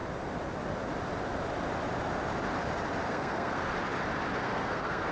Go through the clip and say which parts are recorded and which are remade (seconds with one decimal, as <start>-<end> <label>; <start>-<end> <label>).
0.0-3.1 recorded; 3.1-3.7 remade; 3.7-4.4 recorded; 4.4-5.1 remade